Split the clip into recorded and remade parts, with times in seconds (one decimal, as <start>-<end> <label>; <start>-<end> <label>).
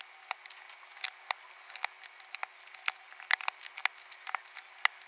0.0-5.1 recorded